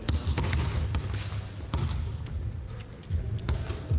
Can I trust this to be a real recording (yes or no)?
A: yes